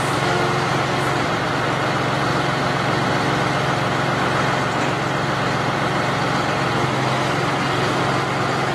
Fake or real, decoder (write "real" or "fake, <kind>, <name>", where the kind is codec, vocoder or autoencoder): real